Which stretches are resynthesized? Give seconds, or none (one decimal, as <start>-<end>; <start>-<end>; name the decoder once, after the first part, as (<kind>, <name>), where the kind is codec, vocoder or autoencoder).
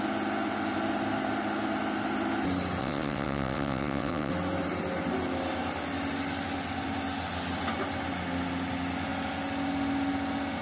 2.8-4.3 (vocoder, WaveNeXt)